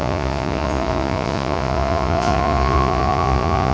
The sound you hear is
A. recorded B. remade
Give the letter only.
B